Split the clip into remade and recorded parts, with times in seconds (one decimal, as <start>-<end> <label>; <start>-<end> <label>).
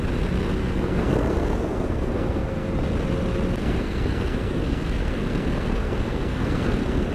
0.0-0.6 recorded; 0.6-2.7 remade; 2.7-3.6 recorded; 3.6-7.1 remade